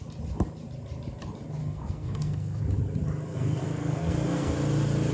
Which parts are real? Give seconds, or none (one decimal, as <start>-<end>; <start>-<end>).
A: 0.0-1.6; 2.6-3.3; 4.5-5.1